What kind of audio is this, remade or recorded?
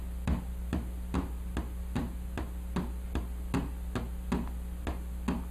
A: recorded